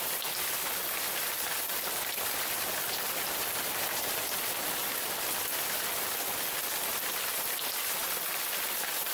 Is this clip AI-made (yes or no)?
no